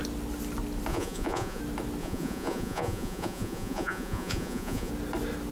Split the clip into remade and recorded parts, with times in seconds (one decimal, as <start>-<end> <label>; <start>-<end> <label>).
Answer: 0.0-0.9 recorded; 0.9-1.6 remade; 1.6-2.0 recorded; 2.0-4.9 remade; 4.9-5.5 recorded

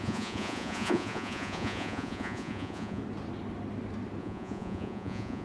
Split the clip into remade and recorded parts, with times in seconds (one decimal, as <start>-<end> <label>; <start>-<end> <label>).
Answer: 0.0-3.0 remade; 3.0-4.2 recorded; 4.2-5.4 remade